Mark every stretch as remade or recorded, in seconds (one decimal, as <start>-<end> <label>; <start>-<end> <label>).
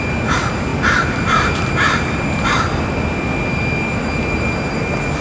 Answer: 0.0-0.7 recorded; 0.7-2.8 remade; 2.8-5.2 recorded